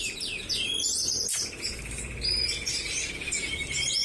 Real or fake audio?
fake